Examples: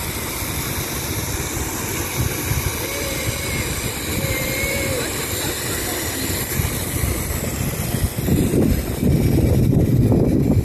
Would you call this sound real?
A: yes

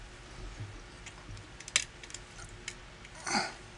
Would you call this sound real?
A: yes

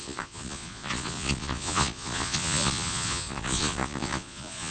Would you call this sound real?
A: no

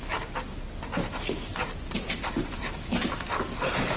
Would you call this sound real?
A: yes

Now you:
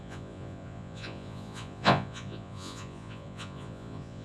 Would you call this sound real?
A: no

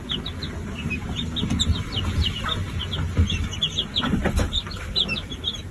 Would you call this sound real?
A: yes